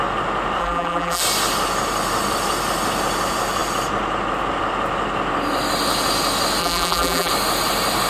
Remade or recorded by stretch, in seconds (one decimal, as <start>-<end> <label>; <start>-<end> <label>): 0.0-0.6 recorded; 0.6-1.2 remade; 1.2-6.6 recorded; 6.6-7.3 remade; 7.3-8.1 recorded